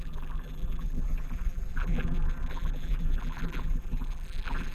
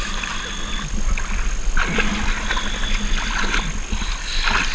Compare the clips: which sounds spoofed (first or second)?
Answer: first